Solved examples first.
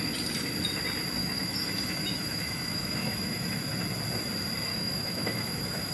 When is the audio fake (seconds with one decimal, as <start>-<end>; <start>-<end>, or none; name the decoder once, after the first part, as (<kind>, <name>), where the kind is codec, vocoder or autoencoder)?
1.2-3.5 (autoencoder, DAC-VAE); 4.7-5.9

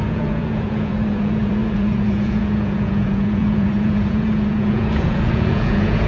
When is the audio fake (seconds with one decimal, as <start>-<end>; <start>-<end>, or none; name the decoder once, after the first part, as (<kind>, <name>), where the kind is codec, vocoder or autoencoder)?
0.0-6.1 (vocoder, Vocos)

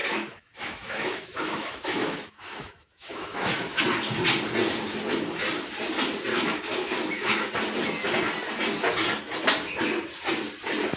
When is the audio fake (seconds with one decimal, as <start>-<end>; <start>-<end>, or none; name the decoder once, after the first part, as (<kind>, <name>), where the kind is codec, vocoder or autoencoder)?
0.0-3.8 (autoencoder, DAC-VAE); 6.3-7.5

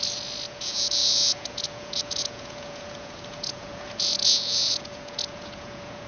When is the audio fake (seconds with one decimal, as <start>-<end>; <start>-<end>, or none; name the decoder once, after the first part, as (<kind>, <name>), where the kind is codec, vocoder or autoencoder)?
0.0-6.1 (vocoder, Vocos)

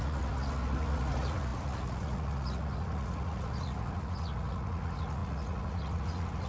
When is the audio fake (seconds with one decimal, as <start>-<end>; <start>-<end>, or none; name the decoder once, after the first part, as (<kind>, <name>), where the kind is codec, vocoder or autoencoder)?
0.0-6.5 (vocoder, Vocos)